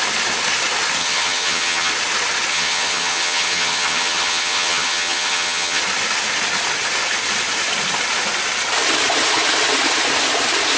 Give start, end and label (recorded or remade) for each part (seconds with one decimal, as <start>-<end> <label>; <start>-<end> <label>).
0.0-1.0 recorded; 1.0-1.9 remade; 1.9-2.5 recorded; 2.5-5.8 remade; 5.8-10.8 recorded